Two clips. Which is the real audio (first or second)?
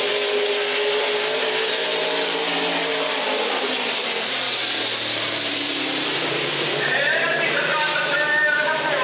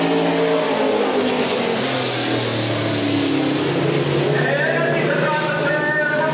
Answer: second